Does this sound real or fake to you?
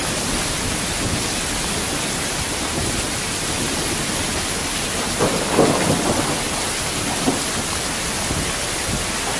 real